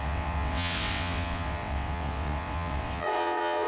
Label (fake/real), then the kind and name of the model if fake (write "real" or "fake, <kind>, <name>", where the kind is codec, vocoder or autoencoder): fake, vocoder, WaveNeXt